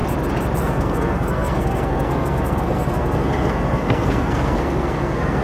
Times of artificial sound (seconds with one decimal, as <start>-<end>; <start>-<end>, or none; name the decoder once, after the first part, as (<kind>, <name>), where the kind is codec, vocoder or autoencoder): 0.6-5.4 (codec, SNAC)